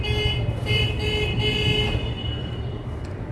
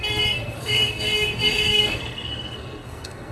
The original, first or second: first